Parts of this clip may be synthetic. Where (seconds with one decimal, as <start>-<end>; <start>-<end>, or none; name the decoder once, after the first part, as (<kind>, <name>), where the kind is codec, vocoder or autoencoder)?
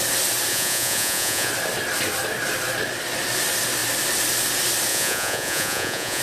0.5-1.5 (vocoder, Vocos); 4.9-6.2